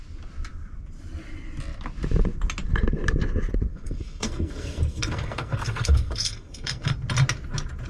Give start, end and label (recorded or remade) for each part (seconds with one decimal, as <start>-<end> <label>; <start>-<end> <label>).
0.0-3.7 recorded; 3.7-6.9 remade; 6.9-7.9 recorded